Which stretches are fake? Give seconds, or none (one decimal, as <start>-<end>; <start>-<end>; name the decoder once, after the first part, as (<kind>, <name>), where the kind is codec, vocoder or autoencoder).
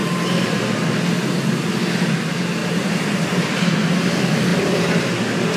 0.0-1.0 (vocoder, BigVGAN v2); 2.6-3.5; 4.5-5.0